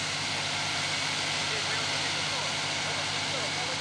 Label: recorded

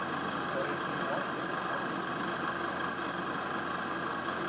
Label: recorded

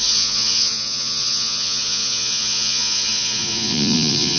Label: remade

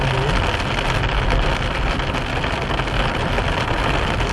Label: recorded